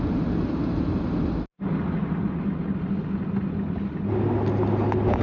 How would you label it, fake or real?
real